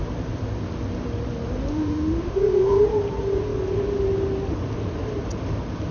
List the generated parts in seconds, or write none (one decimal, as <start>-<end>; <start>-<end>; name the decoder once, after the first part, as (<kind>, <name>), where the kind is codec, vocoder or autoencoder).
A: 1.7-2.7 (autoencoder, DAC-VAE)